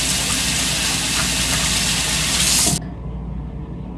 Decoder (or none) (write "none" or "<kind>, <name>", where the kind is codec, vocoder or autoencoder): none